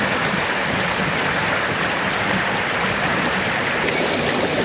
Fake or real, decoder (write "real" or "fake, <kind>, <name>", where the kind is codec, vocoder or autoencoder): real